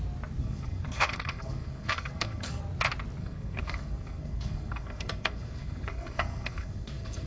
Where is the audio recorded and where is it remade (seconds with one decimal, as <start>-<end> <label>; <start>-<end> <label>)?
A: 0.0-0.4 recorded; 0.4-2.6 remade; 2.6-3.2 recorded; 3.2-7.3 remade